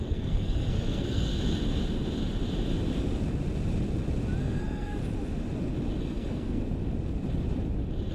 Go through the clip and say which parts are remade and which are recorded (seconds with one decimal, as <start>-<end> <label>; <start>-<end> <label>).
0.0-1.3 remade; 1.3-4.4 recorded; 4.4-5.0 remade; 5.0-6.0 recorded; 6.0-6.6 remade; 6.6-8.1 recorded